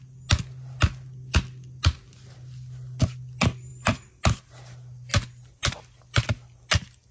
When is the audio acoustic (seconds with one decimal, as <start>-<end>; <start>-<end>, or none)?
0.0-7.1